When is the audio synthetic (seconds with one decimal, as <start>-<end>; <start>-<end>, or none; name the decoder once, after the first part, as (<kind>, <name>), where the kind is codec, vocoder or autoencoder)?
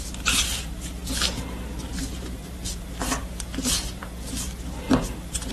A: 0.0-1.0 (vocoder, BigVGAN v2); 2.0-5.5